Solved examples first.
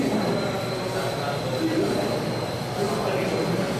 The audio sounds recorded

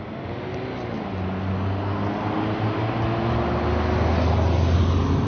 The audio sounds recorded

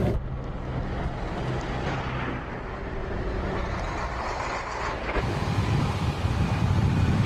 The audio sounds recorded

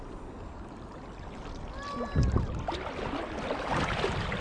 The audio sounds recorded